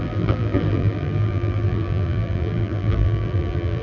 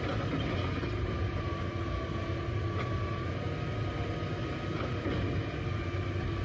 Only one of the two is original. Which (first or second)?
second